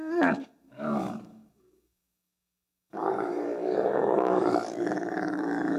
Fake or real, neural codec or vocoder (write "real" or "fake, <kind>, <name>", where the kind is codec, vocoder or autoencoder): fake, codec, DAC